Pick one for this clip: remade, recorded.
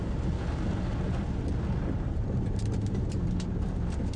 recorded